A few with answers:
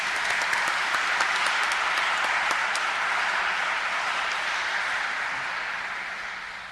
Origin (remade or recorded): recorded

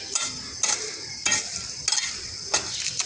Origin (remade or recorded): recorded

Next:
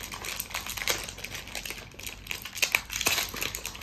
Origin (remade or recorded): remade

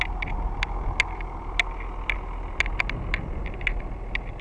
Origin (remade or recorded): recorded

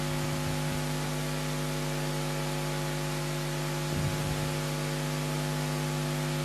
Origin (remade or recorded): recorded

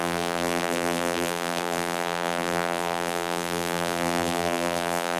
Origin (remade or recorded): remade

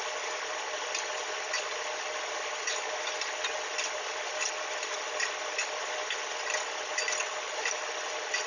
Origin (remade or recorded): recorded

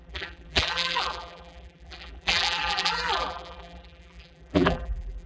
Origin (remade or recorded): remade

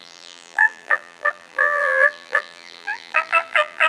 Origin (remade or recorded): remade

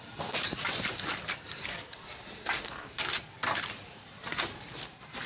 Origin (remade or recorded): remade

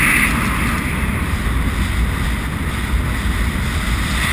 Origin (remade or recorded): recorded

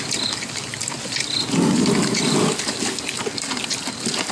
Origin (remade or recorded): recorded